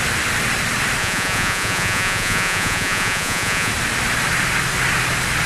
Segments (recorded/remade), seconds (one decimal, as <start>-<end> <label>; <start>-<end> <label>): 0.0-1.0 recorded; 1.0-3.7 remade; 3.7-5.5 recorded